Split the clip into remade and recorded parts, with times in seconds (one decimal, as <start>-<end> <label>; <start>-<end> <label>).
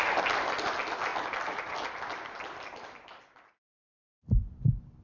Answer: 0.0-5.0 recorded